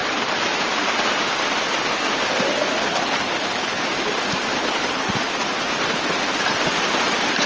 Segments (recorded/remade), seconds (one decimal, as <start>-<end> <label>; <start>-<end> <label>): 0.0-2.9 recorded; 2.9-3.8 remade; 3.8-4.6 recorded; 4.6-5.1 remade; 5.1-7.5 recorded